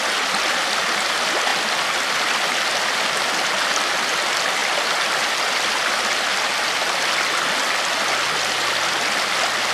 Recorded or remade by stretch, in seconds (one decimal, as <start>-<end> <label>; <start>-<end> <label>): 0.0-9.7 recorded